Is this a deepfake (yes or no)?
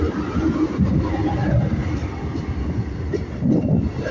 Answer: no